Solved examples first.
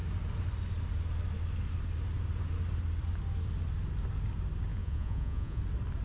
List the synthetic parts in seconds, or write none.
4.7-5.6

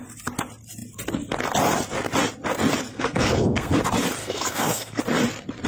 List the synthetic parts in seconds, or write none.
2.9-3.8; 4.2-5.0

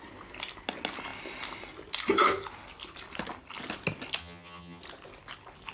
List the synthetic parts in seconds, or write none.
4.2-4.8

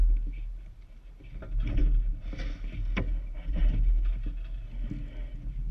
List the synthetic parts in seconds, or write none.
none

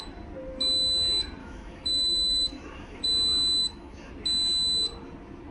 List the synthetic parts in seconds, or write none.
1.4-3.0; 3.6-4.1

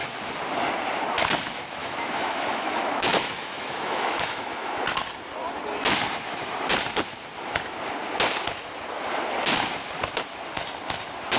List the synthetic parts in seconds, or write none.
1.8-4.7

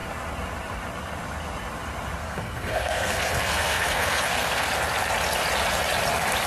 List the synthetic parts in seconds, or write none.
2.2-4.7